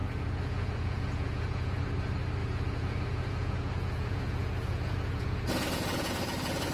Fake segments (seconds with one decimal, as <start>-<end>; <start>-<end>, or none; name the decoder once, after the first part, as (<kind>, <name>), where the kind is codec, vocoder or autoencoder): 0.0-1.8 (vocoder, Vocos); 2.4-6.2